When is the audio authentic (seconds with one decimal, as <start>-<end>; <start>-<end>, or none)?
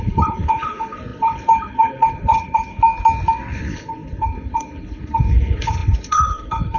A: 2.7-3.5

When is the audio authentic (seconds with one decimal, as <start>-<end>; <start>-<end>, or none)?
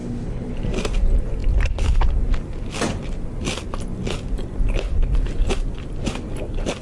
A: 0.5-6.8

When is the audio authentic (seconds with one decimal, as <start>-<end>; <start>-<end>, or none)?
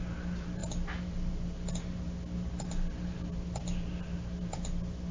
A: 0.0-5.1